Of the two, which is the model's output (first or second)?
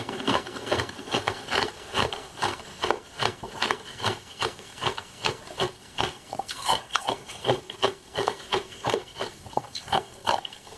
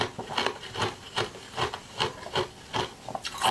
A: first